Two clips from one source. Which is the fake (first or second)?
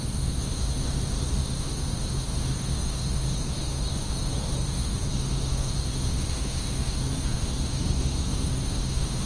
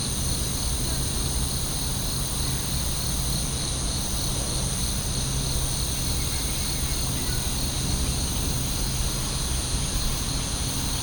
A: first